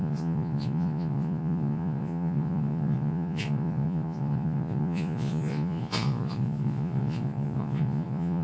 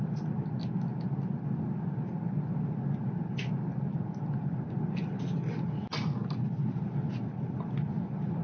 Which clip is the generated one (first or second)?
first